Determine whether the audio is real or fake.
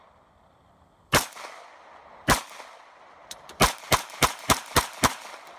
fake